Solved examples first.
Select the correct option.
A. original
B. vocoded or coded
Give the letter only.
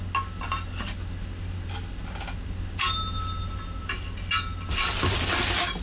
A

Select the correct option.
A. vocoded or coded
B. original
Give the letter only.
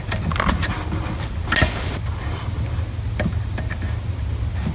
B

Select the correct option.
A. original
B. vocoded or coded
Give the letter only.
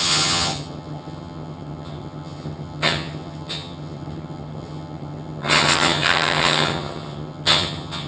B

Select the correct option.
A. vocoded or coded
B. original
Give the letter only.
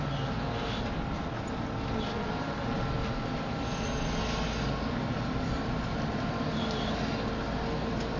B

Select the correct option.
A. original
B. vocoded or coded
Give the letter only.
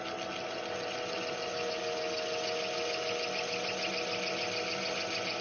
A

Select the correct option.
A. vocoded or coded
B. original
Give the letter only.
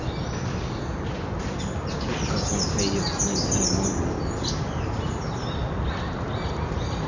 B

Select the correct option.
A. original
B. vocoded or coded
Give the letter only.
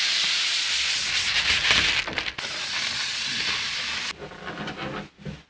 A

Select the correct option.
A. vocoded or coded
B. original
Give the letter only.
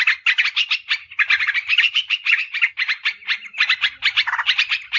B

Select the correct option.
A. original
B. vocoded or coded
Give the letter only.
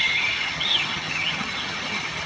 B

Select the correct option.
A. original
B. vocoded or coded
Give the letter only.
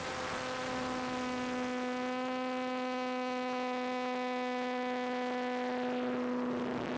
A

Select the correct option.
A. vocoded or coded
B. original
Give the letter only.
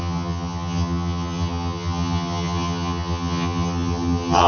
A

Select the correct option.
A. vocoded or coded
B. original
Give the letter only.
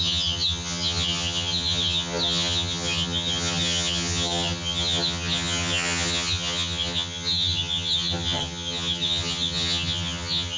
A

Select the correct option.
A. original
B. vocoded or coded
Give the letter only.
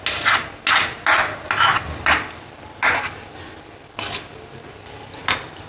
A